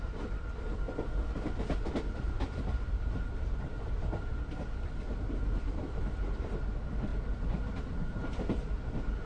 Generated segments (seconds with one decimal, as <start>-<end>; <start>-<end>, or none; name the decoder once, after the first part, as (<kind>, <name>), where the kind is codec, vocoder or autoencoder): none